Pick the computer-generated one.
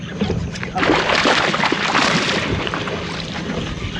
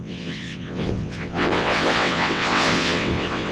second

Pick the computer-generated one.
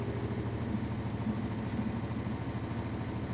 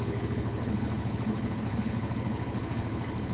second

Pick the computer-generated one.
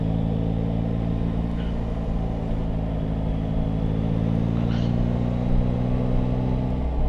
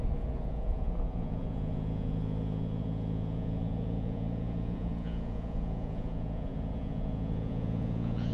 second